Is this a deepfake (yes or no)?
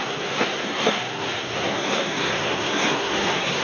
yes